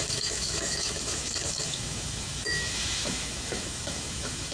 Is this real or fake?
fake